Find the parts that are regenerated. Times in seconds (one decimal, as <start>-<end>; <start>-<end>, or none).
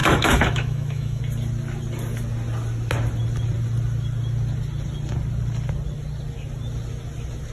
0.0-1.2